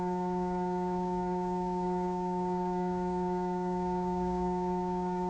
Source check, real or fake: fake